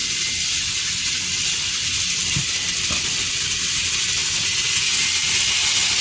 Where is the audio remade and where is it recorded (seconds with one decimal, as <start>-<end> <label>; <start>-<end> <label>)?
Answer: 0.0-0.9 remade; 0.9-2.2 recorded; 2.2-3.3 remade; 3.3-6.0 recorded